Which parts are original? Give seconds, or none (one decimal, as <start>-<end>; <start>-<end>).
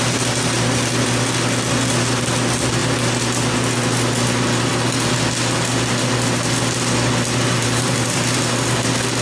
0.0-7.6; 8.4-9.2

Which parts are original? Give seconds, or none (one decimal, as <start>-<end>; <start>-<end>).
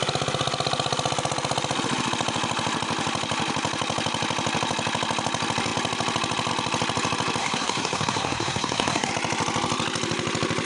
0.0-7.4; 9.1-10.7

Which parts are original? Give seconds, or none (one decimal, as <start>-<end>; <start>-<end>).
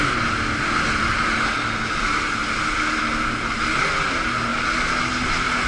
0.0-5.7